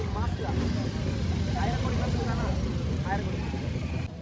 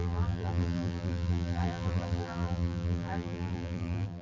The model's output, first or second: second